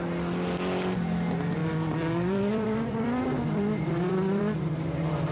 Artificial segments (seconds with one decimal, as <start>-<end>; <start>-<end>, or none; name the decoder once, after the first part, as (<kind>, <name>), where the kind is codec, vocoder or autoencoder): 1.6-4.4 (vocoder, BigVGAN v2)